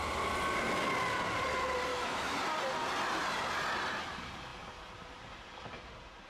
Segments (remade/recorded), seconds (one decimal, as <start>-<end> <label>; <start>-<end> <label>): 0.0-1.9 recorded; 1.9-2.4 remade; 2.4-6.3 recorded

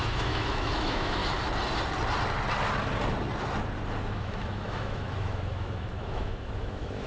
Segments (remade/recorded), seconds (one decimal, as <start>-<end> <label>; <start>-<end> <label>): 0.0-1.2 remade; 1.2-4.1 recorded; 4.1-7.1 remade

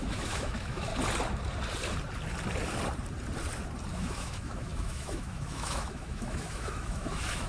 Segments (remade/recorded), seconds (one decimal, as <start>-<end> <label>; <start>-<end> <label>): 0.0-0.9 remade; 0.9-3.9 recorded; 3.9-7.5 remade

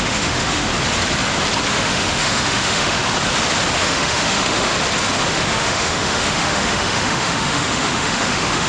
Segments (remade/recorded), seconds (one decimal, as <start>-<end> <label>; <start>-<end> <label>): 0.0-0.7 remade; 0.7-1.7 recorded; 1.7-3.0 remade; 3.0-3.8 recorded; 3.8-4.7 remade; 4.7-5.3 recorded; 5.3-8.7 remade

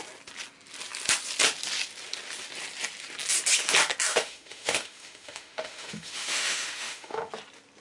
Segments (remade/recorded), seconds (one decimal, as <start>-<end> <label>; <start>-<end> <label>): 0.0-4.1 recorded; 4.1-7.3 remade; 7.3-7.8 recorded

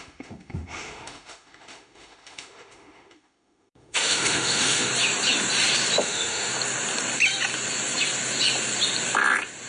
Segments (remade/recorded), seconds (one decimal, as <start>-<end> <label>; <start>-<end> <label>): 0.0-4.9 remade; 4.9-6.0 recorded; 6.0-6.5 remade; 6.5-9.7 recorded

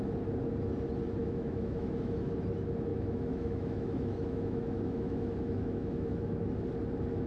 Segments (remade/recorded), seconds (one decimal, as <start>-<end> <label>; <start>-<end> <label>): 0.0-1.2 recorded; 1.2-2.4 remade; 2.4-2.9 recorded; 2.9-6.6 remade; 6.6-7.3 recorded

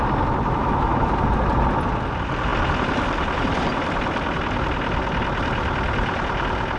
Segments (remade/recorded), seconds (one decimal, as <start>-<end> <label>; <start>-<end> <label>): 0.0-0.6 recorded; 0.6-1.1 remade; 1.1-6.8 recorded